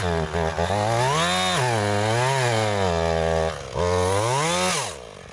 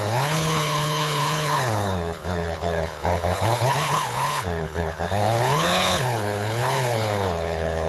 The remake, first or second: second